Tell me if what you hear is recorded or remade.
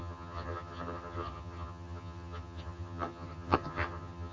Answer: remade